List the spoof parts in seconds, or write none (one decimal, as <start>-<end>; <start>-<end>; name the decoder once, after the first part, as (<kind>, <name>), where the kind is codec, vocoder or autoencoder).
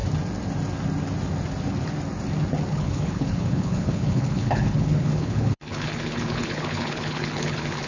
2.7-7.9 (codec, HILCodec)